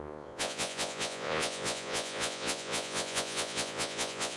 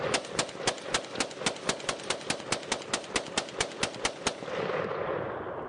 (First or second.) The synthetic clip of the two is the first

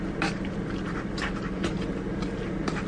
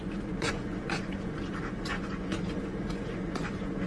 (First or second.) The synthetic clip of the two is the second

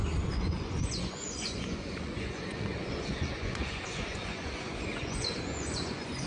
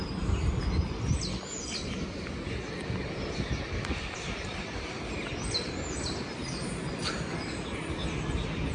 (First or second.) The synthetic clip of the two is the first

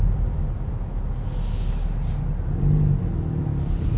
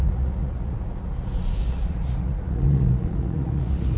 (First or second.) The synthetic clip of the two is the second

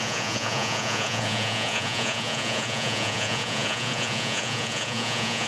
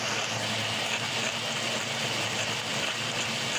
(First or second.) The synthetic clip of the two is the first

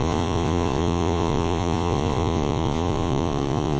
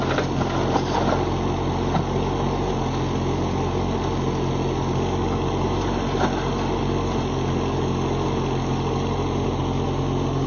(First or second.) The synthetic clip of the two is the first